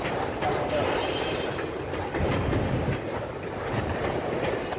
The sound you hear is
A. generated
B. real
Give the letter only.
A